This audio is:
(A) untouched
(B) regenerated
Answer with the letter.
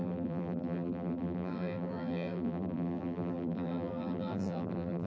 B